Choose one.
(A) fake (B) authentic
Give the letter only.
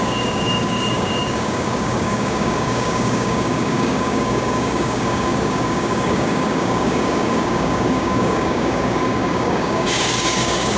A